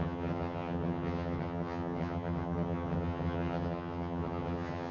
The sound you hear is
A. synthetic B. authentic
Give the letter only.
A